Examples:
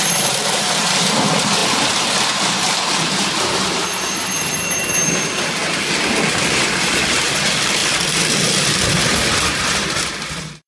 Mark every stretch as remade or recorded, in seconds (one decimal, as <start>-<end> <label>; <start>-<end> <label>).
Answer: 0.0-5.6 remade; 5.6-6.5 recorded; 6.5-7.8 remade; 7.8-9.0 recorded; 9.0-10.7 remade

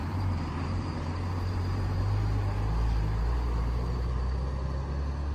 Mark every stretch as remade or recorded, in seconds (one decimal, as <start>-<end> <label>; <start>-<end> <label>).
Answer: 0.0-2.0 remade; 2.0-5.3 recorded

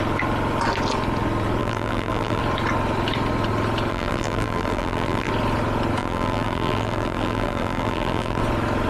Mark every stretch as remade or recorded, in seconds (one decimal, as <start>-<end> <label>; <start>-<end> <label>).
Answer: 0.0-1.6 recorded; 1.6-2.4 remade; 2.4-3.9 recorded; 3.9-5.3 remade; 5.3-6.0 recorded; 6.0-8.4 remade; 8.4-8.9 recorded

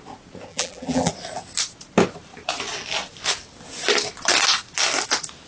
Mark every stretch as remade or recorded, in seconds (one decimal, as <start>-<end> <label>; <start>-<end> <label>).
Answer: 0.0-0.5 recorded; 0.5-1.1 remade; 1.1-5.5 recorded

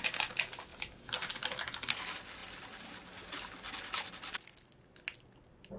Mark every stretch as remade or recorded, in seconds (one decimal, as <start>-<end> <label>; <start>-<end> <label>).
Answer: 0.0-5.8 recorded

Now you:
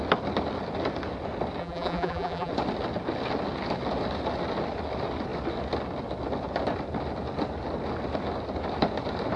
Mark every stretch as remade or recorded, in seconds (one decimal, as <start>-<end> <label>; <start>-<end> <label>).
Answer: 0.0-1.6 recorded; 1.6-2.5 remade; 2.5-9.4 recorded

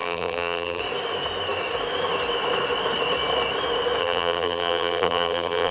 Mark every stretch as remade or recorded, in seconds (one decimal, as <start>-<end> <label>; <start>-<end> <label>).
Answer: 0.0-0.8 remade; 0.8-4.0 recorded; 4.0-5.7 remade